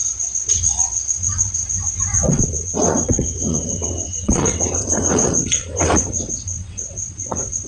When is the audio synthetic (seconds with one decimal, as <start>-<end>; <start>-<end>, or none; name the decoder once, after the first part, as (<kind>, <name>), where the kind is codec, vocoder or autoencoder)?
0.0-7.7 (vocoder, WaveNeXt)